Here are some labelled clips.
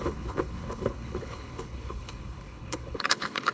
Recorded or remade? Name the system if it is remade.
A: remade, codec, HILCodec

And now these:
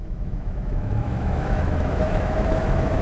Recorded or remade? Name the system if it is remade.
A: remade, autoencoder, DAC-VAE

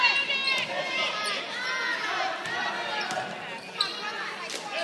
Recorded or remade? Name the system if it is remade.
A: recorded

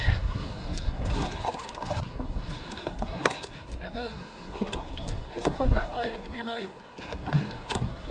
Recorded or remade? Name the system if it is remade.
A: remade, codec, SNAC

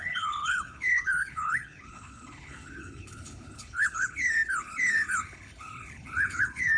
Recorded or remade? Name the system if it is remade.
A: remade, codec, HILCodec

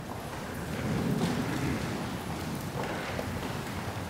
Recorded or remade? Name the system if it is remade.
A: recorded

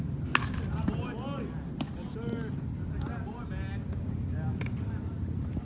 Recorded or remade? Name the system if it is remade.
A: recorded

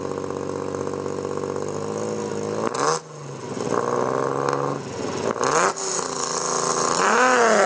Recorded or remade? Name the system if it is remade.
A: recorded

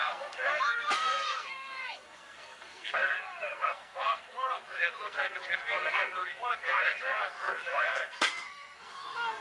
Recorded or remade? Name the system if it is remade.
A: remade, codec, SNAC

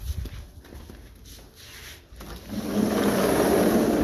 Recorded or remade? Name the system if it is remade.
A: recorded